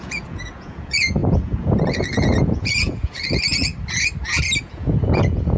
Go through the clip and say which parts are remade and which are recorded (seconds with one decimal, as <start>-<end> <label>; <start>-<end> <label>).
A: 0.0-3.7 remade; 3.7-4.6 recorded; 4.6-5.6 remade

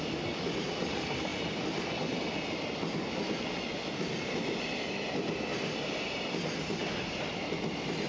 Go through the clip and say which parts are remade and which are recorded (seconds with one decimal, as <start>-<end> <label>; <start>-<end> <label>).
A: 0.0-8.1 recorded

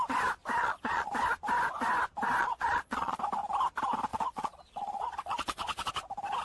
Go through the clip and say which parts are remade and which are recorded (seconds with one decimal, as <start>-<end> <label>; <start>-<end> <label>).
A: 0.0-0.6 recorded; 0.6-1.1 remade; 1.1-2.4 recorded; 2.4-3.2 remade; 3.2-4.1 recorded; 4.1-5.9 remade; 5.9-6.4 recorded

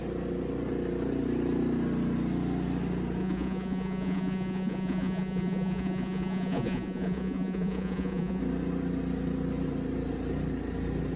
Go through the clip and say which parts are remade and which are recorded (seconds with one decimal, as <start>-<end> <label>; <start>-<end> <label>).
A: 0.0-3.2 recorded; 3.2-8.4 remade; 8.4-11.2 recorded

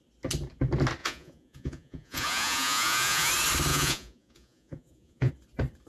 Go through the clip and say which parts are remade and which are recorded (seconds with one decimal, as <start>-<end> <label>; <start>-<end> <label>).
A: 0.0-1.0 recorded; 1.0-3.3 remade; 3.3-3.7 recorded; 3.7-5.3 remade; 5.3-5.9 recorded

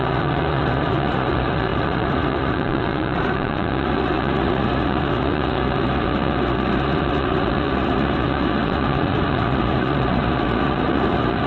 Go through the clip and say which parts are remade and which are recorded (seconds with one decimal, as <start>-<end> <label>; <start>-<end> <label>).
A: 0.0-11.5 remade

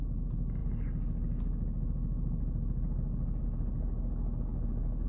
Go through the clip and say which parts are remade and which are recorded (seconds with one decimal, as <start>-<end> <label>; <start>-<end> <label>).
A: 0.0-5.1 recorded